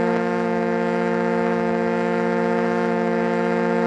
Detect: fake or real fake